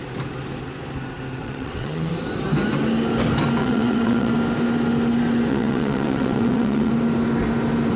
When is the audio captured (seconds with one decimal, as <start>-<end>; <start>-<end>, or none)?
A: 0.0-1.4; 2.1-3.6; 4.3-5.5; 6.9-8.0